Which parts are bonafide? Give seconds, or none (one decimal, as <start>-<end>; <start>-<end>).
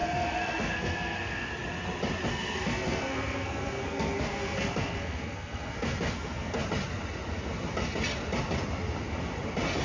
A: 1.5-2.3; 6.6-9.8